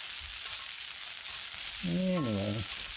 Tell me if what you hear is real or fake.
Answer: real